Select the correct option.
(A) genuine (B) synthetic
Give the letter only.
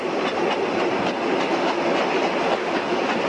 A